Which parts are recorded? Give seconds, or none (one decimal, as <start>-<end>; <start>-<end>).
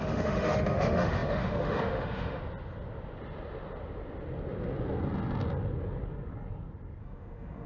2.4-7.0